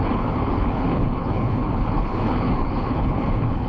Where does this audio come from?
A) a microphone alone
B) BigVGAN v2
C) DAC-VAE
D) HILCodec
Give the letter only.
D